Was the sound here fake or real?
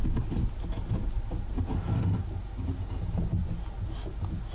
real